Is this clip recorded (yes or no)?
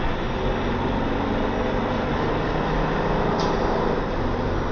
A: yes